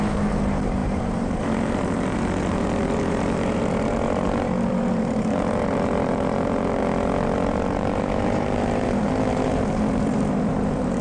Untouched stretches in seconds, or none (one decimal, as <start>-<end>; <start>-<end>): 6.8-7.5